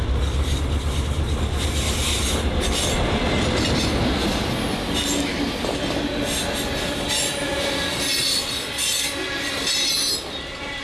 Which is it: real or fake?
real